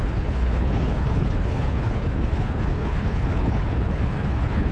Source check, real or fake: fake